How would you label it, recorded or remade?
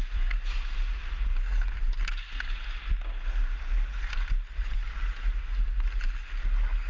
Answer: recorded